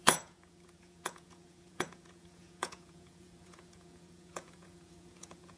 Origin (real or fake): fake